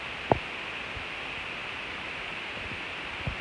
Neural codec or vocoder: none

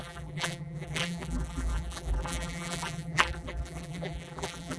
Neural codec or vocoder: vocoder, BigVGAN v2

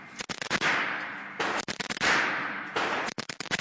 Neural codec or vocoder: vocoder, BigVGAN v2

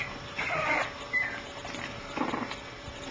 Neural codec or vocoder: none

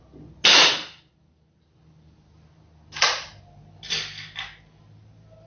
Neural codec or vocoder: none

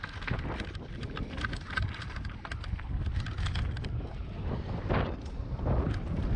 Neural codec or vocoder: none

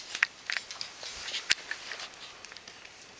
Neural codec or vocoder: none